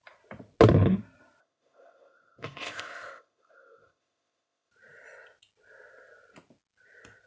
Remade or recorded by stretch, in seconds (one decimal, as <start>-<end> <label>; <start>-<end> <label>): 0.0-1.4 recorded; 1.4-4.7 remade; 4.7-7.3 recorded